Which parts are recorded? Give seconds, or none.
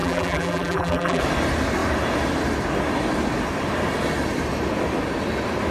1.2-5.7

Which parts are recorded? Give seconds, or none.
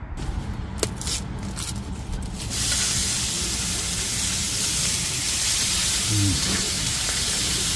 0.0-4.4